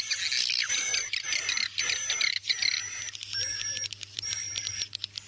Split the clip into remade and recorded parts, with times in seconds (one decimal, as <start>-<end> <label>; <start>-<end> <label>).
0.0-0.9 recorded; 0.9-2.4 remade; 2.4-3.5 recorded; 3.5-4.5 remade; 4.5-5.3 recorded